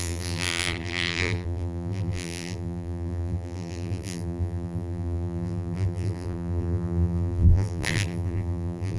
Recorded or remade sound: remade